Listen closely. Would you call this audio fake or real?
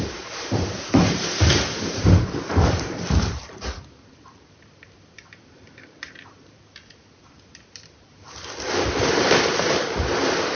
fake